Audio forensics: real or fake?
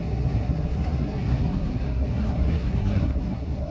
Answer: fake